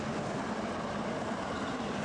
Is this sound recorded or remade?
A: recorded